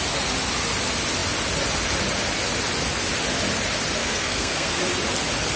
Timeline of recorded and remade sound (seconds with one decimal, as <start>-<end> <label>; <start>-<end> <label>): 0.0-4.0 recorded; 4.0-4.8 remade; 4.8-5.6 recorded